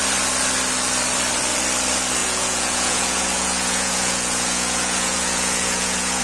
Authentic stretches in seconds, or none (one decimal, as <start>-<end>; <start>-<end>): 0.0-2.2